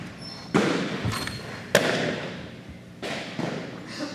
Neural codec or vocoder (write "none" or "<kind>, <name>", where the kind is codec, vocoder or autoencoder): none